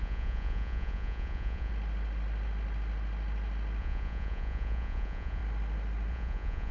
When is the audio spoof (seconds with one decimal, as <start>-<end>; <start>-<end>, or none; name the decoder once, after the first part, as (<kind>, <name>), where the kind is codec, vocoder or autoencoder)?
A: 0.0-1.7 (vocoder, Vocos); 3.8-5.4; 6.1-6.7